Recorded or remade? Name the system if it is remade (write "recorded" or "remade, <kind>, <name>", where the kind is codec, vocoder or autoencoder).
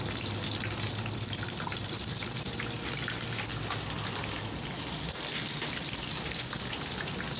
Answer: recorded